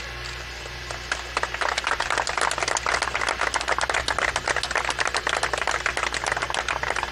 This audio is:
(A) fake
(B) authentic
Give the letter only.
B